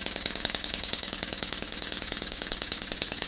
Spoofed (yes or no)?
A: yes